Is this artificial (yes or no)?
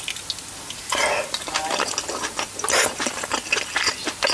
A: no